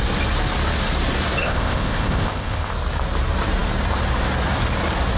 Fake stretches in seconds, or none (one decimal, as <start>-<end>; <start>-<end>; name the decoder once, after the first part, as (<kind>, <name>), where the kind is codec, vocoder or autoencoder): 1.4-2.7 (codec, ZipCodec)